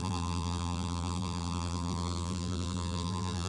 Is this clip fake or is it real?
fake